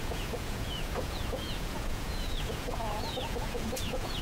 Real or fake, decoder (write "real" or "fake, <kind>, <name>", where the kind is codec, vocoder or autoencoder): fake, vocoder, Vocos